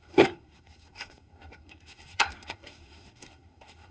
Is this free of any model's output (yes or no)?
no